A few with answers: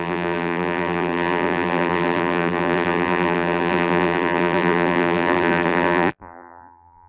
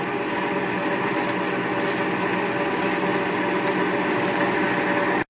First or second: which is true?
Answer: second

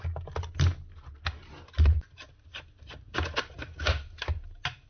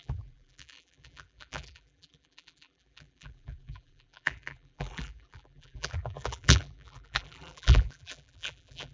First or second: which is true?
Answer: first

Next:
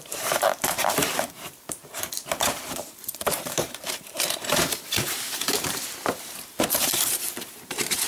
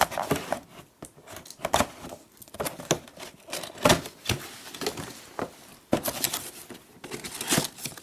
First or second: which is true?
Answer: second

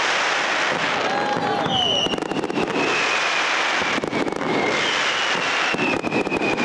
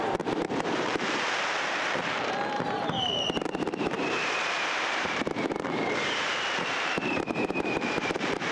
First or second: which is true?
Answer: first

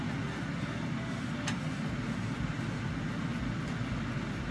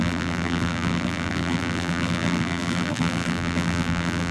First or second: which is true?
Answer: first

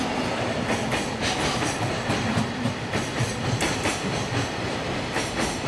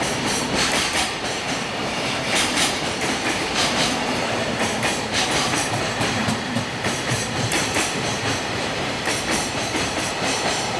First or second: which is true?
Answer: first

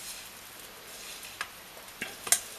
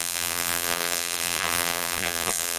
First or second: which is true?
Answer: first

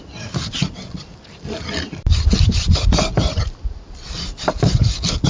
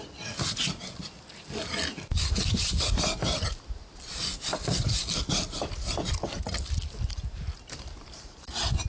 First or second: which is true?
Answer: second